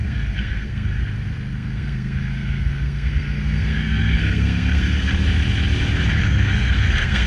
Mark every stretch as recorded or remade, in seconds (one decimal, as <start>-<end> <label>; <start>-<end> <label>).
0.0-1.0 remade; 1.0-1.5 recorded; 1.5-5.1 remade; 5.1-6.2 recorded; 6.2-7.3 remade